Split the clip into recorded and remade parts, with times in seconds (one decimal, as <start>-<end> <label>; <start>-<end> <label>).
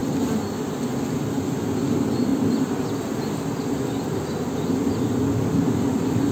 0.0-6.3 recorded